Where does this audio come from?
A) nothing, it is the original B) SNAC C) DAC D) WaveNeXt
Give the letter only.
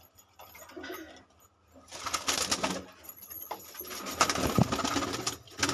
A